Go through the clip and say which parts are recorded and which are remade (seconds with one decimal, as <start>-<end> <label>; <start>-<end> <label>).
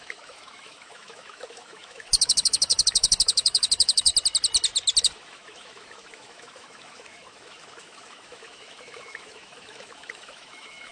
0.0-4.1 remade; 4.1-5.0 recorded; 5.0-10.9 remade